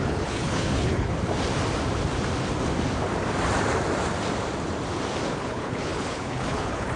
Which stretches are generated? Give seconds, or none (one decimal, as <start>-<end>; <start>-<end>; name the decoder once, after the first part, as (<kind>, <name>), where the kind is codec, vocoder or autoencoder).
0.0-1.1 (codec, HILCodec); 5.3-7.0